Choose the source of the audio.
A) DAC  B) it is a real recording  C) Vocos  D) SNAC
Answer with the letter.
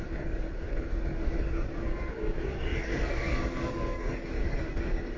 A